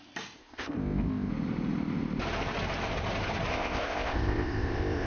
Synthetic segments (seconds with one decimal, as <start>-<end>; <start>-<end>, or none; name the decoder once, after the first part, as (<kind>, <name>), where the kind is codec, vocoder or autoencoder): 0.4-1.3 (codec, ZipCodec); 3.5-5.1